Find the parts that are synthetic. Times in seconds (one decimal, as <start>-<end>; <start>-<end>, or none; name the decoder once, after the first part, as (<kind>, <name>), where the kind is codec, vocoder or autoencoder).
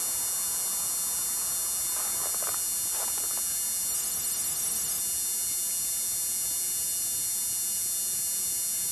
3.9-5.0 (autoencoder, DAC-VAE)